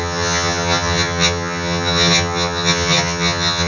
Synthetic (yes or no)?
yes